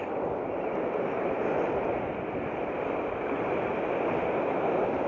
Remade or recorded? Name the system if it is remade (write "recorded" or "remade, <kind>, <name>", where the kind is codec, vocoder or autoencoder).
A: recorded